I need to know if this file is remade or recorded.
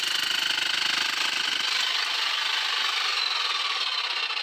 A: recorded